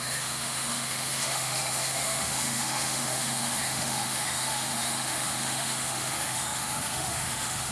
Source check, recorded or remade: remade